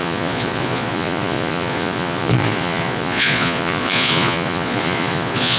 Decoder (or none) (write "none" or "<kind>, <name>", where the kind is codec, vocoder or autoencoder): vocoder, Vocos